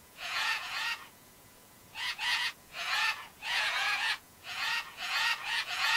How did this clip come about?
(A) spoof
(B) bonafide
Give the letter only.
A